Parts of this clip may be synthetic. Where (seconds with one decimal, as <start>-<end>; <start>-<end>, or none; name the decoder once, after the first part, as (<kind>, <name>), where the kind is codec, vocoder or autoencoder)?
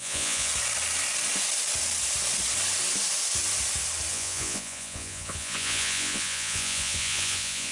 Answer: 0.0-0.5 (vocoder, Vocos); 4.1-7.7